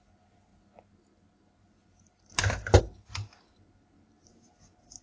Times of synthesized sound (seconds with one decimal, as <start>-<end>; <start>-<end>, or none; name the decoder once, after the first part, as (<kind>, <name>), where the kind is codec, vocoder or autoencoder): none